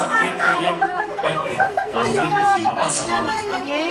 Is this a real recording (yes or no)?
no